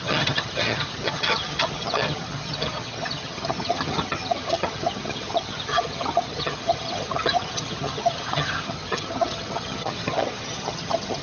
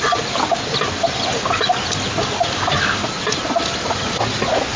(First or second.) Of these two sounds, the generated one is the first